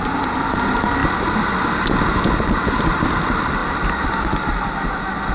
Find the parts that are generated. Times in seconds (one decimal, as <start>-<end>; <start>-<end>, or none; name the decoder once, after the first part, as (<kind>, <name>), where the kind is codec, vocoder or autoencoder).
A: none